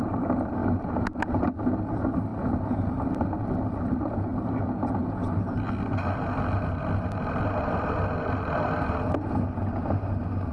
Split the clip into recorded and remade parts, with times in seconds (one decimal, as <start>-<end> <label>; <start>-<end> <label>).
0.0-10.5 recorded